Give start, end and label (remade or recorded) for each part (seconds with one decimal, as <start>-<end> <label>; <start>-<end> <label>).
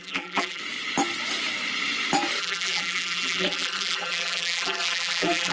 0.0-0.6 remade; 0.6-2.4 recorded; 2.4-5.5 remade